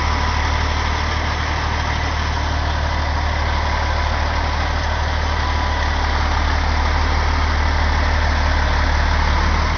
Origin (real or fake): real